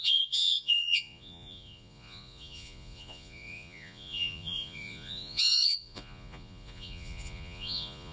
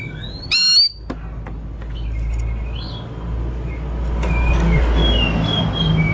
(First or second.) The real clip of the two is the second